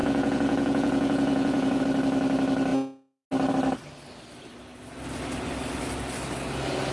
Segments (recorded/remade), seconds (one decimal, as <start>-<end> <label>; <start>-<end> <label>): 0.0-1.8 remade; 1.8-6.9 recorded

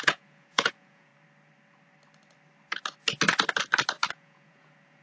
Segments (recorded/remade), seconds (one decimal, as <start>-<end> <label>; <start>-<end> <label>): 0.0-1.1 remade; 1.1-4.1 recorded; 4.1-5.0 remade

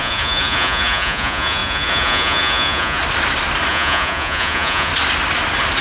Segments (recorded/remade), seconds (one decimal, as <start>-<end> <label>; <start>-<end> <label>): 0.0-3.0 remade; 3.0-3.7 recorded; 3.7-4.9 remade; 4.9-5.8 recorded

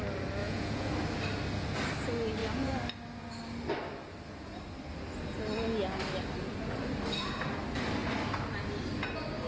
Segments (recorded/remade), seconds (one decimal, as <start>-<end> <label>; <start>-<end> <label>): 0.0-0.4 recorded; 0.4-0.9 remade; 0.9-9.5 recorded